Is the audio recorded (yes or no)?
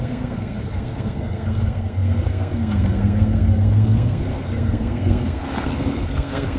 no